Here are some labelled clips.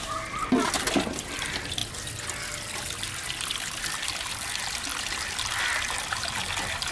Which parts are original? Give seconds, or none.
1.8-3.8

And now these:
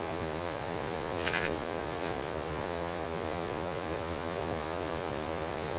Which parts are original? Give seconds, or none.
none

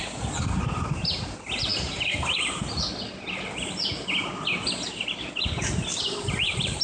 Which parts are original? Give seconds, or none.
0.0-5.9

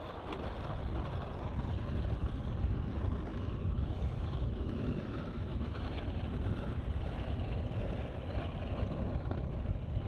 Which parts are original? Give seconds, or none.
0.0-3.3; 6.2-10.1

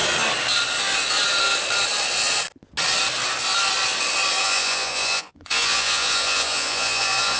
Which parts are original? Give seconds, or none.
0.0-4.4

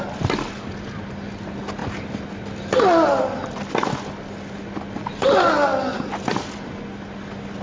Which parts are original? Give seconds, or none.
0.0-7.6

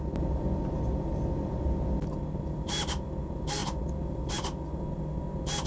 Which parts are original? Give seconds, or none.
0.0-5.7